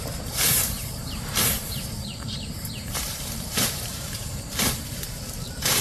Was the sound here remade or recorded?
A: remade